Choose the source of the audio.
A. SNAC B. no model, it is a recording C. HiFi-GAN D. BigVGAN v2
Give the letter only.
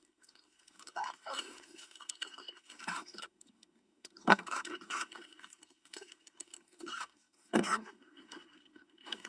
A